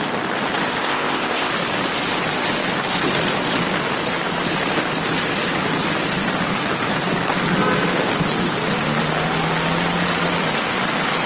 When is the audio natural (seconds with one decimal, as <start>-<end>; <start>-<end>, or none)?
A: 0.0-0.8; 1.5-11.3